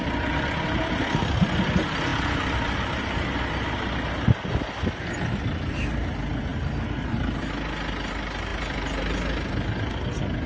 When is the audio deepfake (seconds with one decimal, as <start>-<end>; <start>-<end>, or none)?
none